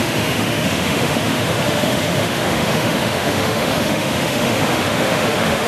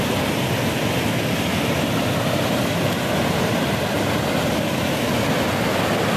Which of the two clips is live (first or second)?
second